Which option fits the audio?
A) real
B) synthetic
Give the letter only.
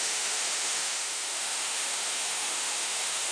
B